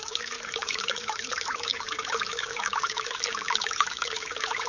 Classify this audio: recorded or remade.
remade